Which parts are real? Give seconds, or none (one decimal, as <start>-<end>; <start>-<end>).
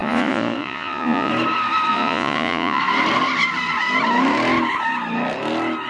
1.3-1.9; 2.8-5.9